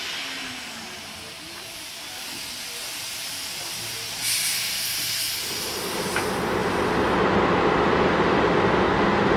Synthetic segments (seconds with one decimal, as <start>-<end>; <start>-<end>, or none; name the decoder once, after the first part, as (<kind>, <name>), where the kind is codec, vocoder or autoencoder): 6.6-8.5 (vocoder, BigVGAN v2)